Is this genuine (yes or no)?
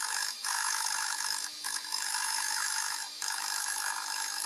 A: no